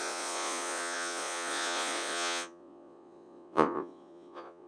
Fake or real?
fake